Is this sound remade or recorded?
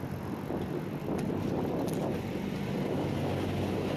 recorded